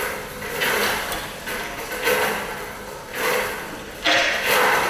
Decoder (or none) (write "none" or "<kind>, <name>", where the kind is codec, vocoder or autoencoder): none